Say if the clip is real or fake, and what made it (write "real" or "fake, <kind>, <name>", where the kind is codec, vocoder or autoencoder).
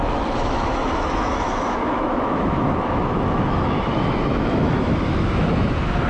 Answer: fake, autoencoder, DAC-VAE